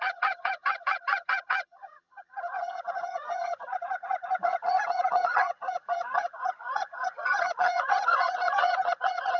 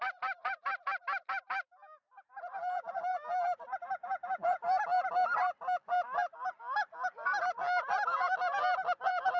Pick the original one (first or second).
second